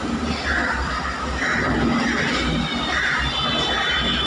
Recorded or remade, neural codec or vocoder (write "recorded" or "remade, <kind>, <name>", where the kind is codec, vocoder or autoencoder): recorded